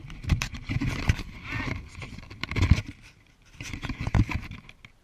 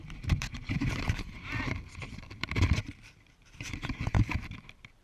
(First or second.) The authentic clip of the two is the first